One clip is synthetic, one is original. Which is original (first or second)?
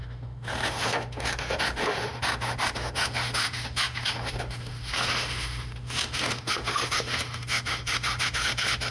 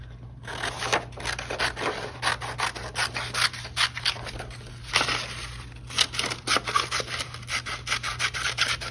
second